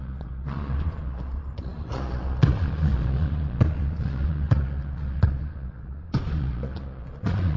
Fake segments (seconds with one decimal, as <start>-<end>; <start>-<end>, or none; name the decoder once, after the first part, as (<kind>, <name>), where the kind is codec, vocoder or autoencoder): 0.0-7.6 (vocoder, Vocos)